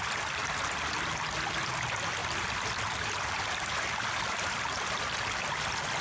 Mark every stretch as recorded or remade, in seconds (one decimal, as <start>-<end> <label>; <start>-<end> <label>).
0.0-6.0 recorded